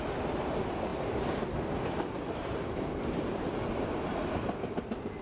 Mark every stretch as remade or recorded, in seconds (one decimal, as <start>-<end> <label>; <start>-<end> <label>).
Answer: 0.0-0.9 recorded; 0.9-4.0 remade; 4.0-5.2 recorded